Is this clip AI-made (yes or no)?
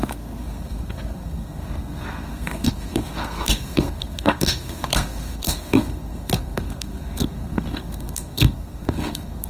yes